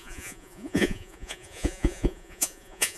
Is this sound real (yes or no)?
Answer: no